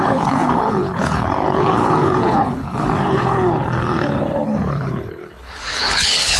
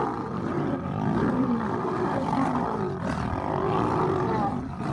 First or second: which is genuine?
second